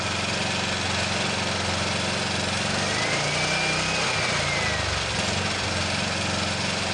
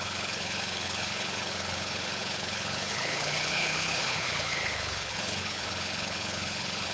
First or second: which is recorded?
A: first